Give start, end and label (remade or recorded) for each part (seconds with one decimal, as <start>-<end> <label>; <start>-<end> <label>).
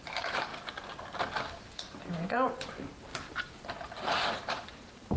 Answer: 0.0-0.5 remade; 0.5-2.1 recorded; 2.1-5.2 remade